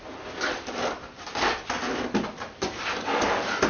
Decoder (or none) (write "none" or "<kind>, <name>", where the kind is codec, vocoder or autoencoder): none